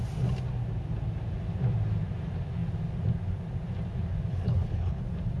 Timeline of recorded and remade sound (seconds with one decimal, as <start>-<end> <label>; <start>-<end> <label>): 0.0-4.3 recorded; 4.3-5.0 remade; 5.0-5.4 recorded